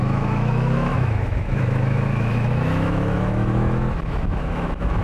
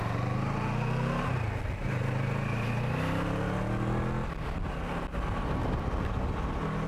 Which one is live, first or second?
second